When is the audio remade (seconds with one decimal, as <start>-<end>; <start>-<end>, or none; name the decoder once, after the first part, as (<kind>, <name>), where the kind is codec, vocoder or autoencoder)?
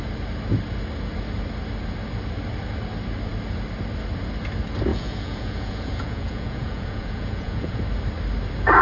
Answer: 4.9-7.8 (vocoder, Vocos)